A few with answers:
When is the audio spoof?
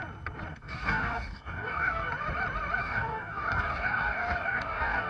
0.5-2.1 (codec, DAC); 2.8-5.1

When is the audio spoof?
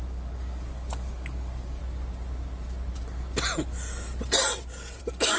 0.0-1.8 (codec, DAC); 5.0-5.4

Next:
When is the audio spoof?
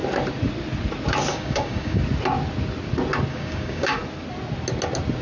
1.3-2.0 (codec, DAC); 3.3-4.0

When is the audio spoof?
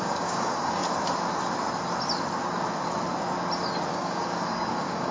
0.0-0.8 (codec, DAC); 3.9-5.1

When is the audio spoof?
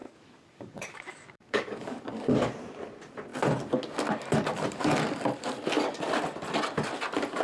0.0-2.5 (codec, DAC)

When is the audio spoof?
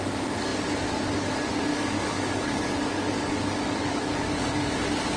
1.7-4.8 (codec, DAC)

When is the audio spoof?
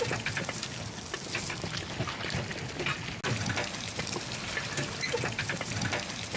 none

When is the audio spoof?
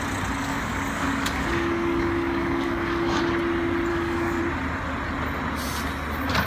0.4-3.2 (codec, DAC); 3.9-4.4